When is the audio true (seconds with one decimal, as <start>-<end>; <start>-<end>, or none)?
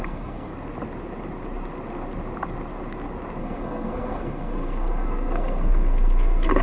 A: 0.5-3.4